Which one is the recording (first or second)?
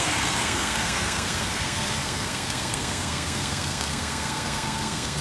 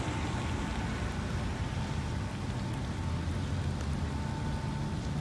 second